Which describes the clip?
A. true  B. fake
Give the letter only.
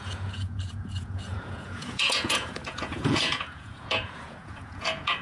B